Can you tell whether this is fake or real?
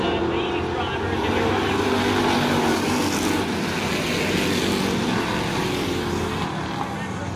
real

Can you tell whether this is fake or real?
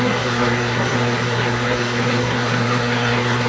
fake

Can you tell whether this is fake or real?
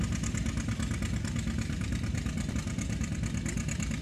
real